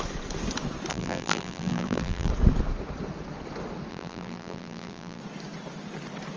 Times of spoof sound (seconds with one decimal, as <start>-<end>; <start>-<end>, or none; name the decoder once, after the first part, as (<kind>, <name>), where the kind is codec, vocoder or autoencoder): 0.9-2.3 (vocoder, BigVGAN v2); 3.9-5.2